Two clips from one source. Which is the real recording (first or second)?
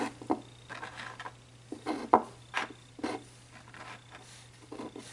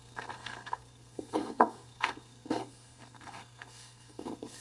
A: first